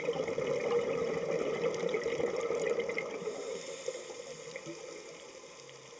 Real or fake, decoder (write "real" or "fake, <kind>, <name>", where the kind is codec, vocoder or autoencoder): real